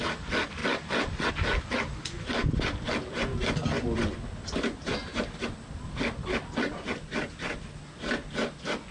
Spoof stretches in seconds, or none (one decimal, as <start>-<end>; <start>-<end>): none